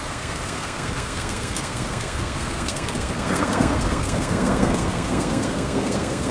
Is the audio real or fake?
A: fake